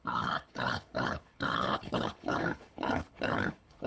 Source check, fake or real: fake